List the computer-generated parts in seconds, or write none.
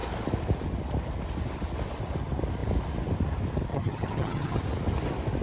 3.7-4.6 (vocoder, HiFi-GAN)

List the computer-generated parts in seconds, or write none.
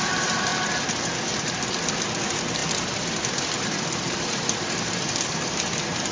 0.0-0.5 (vocoder, BigVGAN v2); 1.9-6.1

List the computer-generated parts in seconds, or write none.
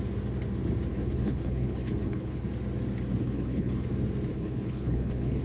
0.9-2.5 (codec, HILCodec); 3.2-3.9; 4.3-5.4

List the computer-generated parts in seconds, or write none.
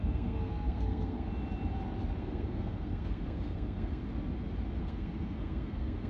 0.0-1.3 (codec, SNAC); 2.2-4.1; 4.8-6.1